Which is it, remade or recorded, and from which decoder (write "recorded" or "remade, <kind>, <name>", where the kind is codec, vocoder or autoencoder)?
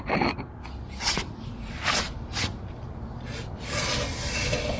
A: recorded